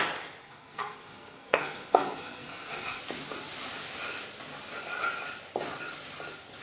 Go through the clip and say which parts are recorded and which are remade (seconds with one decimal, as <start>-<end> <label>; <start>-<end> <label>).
0.0-0.4 recorded; 0.4-3.0 remade; 3.0-6.6 recorded

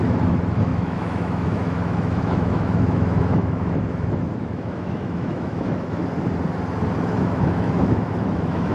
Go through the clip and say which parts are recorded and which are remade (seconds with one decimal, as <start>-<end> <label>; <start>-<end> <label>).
0.0-6.0 remade; 6.0-7.0 recorded; 7.0-8.7 remade